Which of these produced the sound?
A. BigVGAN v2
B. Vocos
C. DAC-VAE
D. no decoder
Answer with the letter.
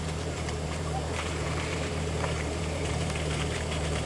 A